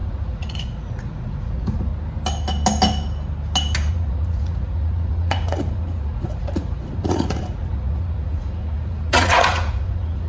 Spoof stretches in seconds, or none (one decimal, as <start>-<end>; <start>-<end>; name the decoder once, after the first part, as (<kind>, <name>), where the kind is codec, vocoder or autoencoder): 0.0-1.9 (vocoder, Vocos); 3.9-10.3